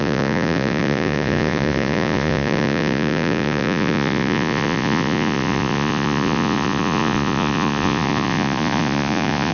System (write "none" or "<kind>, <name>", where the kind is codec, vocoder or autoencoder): vocoder, Vocos